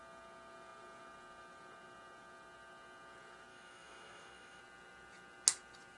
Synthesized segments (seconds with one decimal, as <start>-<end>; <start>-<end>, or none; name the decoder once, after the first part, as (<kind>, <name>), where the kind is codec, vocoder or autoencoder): 3.5-4.6 (autoencoder, DAC-VAE)